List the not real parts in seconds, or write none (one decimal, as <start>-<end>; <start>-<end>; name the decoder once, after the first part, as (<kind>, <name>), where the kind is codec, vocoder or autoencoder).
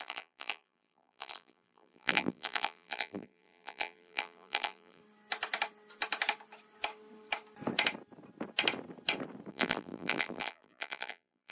0.0-5.0 (vocoder, BigVGAN v2); 9.5-11.5